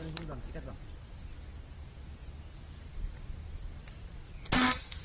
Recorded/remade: recorded